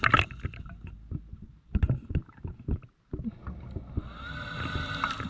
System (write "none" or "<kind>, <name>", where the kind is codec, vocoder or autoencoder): none